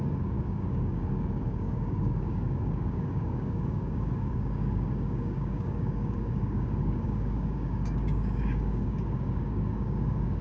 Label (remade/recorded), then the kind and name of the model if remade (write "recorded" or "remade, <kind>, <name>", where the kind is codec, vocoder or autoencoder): remade, codec, DAC